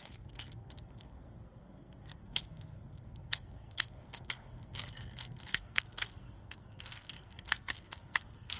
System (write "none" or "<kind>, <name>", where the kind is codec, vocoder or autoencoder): codec, SNAC